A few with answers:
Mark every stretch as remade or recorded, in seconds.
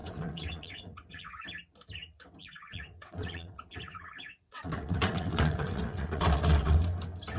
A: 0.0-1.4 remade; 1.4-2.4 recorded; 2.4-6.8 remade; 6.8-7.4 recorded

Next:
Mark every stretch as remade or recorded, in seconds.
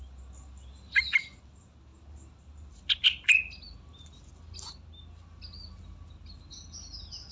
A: 0.0-7.3 recorded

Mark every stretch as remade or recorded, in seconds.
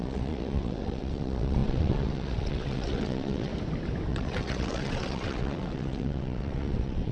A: 0.0-3.5 remade; 3.5-4.1 recorded; 4.1-7.1 remade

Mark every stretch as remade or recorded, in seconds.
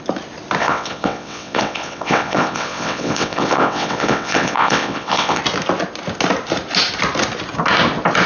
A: 0.0-0.6 recorded; 0.6-5.4 remade; 5.4-8.3 recorded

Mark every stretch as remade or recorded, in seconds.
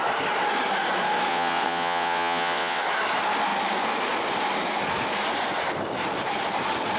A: 0.0-1.3 recorded; 1.3-2.8 remade; 2.8-7.0 recorded